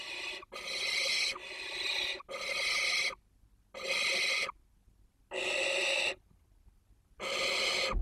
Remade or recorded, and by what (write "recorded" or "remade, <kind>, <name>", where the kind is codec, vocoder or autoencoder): recorded